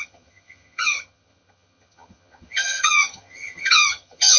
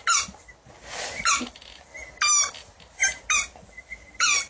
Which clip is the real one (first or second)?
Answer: second